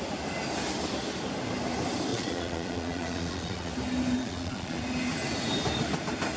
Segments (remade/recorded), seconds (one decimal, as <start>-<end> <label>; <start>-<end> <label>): 0.0-2.1 recorded; 2.1-3.7 remade; 3.7-4.2 recorded; 4.2-4.8 remade; 4.8-6.4 recorded